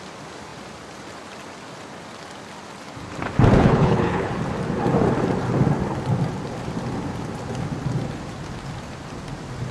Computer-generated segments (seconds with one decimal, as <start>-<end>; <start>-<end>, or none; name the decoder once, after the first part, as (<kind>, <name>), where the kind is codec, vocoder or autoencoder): 3.6-4.3 (codec, HILCodec)